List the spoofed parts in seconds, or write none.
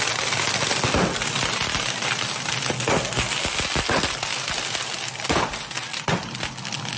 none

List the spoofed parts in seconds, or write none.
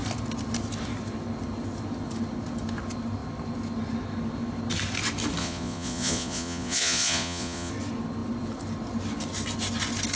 5.4-7.7 (vocoder, Vocos)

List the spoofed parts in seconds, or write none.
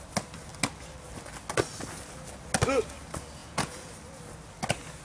3.4-3.9 (vocoder, Vocos)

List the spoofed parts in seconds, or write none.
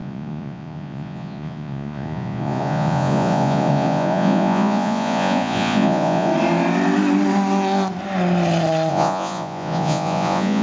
0.0-6.3 (vocoder, Vocos); 8.9-10.6